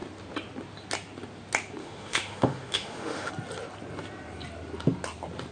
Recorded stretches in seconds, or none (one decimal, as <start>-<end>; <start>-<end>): 0.0-1.8; 3.3-5.5